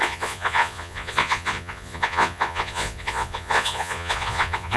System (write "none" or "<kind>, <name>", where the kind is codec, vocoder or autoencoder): vocoder, Vocos